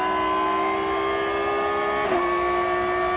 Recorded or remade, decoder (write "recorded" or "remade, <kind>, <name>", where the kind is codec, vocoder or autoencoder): recorded